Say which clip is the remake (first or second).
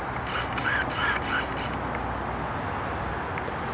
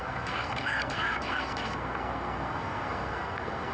second